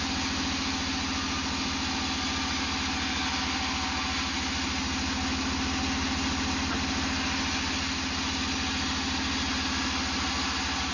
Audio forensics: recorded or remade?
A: recorded